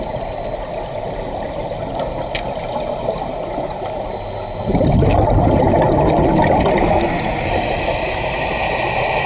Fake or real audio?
real